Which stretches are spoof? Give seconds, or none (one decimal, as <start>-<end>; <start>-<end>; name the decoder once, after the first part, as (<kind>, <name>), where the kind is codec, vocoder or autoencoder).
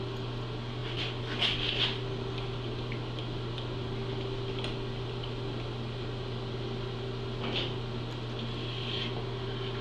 none